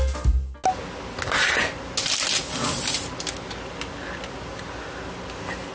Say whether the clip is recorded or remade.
recorded